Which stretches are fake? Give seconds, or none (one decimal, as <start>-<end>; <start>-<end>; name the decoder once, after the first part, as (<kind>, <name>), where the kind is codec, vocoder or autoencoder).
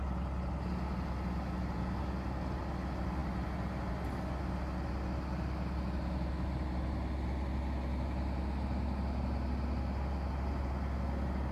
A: none